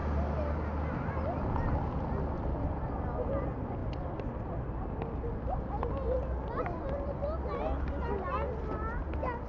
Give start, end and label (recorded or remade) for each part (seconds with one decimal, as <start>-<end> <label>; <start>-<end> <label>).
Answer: 0.0-9.5 recorded